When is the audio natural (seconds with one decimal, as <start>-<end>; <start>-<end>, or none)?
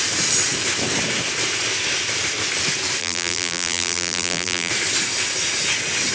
0.0-3.0; 4.7-6.1